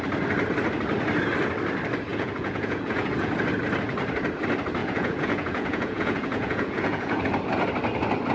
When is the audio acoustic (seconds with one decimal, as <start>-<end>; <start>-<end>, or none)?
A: 0.0-2.1; 3.3-4.8; 7.2-8.3